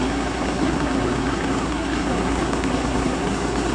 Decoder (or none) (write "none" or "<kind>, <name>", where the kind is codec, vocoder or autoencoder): codec, SNAC